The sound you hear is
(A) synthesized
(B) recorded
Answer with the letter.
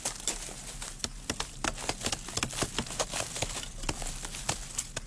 B